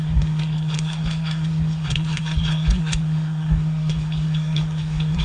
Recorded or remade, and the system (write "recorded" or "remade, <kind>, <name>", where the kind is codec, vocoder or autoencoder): remade, codec, SNAC